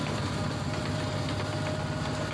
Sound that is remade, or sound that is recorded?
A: recorded